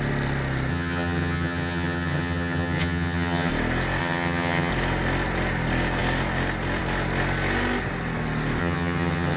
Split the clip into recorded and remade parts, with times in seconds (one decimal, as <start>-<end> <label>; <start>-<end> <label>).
0.0-0.7 recorded; 0.7-3.5 remade; 3.5-4.0 recorded; 4.0-4.7 remade; 4.7-8.6 recorded; 8.6-9.4 remade